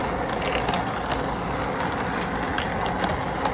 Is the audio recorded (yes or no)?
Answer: yes